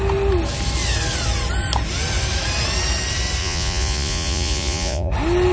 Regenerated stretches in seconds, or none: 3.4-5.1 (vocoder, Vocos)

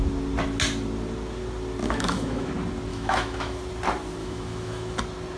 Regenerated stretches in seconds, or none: 1.8-2.5 (autoencoder, DAC-VAE); 2.9-3.6; 4.2-5.0

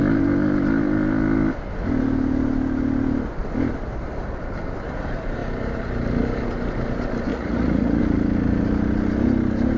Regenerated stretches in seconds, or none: 7.3-8.0 (vocoder, Vocos)

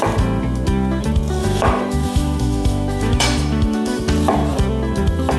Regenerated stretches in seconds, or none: 1.4-4.0 (autoencoder, DAC-VAE)

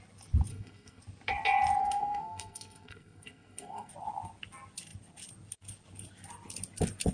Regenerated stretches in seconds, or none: 0.5-1.0 (codec, SNAC); 1.8-3.9